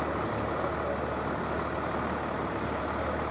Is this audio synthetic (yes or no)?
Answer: no